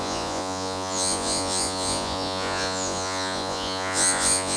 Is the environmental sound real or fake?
fake